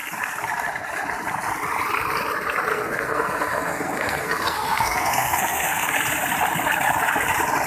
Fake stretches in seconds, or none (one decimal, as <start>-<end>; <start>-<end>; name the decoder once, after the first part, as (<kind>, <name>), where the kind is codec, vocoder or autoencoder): 2.7-5.9 (codec, SNAC)